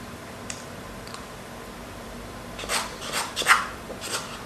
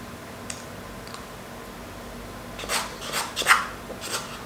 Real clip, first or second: second